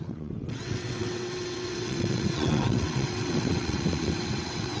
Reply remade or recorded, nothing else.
remade